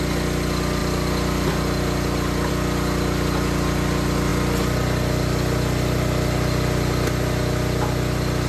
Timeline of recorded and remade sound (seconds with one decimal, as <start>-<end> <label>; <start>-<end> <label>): 0.0-8.5 recorded